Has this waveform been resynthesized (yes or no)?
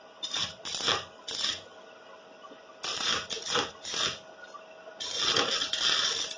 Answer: no